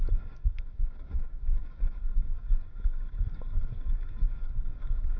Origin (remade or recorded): remade